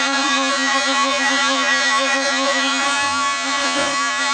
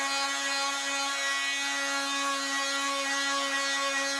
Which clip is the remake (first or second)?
first